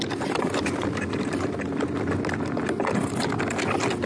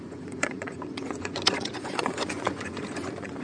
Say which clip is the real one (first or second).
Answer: first